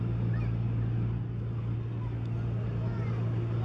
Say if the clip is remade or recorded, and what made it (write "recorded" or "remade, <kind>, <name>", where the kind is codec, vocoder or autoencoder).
recorded